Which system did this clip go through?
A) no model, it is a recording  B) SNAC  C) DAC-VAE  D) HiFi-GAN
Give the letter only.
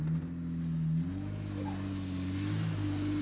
A